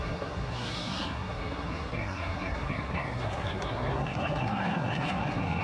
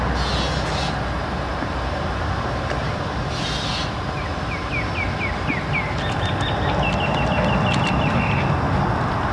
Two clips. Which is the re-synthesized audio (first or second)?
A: first